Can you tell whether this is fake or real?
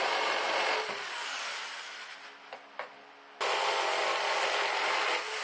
real